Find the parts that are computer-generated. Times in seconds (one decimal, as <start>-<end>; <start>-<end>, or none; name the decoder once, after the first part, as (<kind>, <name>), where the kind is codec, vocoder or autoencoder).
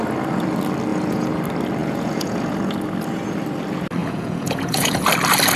0.9-1.4 (vocoder, Vocos); 1.8-2.7; 4.0-5.1